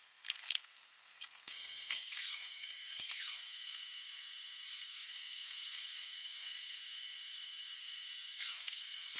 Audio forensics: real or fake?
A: fake